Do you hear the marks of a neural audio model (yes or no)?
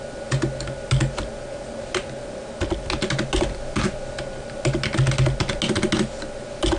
no